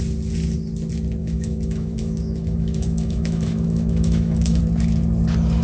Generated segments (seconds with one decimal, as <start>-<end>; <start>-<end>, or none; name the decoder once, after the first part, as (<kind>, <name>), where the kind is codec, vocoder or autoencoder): 1.2-4.6 (autoencoder, DAC-VAE)